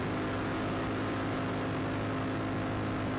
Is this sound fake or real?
real